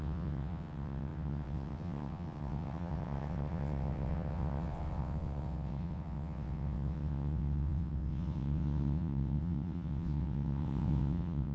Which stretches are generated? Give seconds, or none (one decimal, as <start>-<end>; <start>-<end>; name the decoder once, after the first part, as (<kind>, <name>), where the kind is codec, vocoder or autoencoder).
0.0-11.5 (vocoder, WaveNeXt)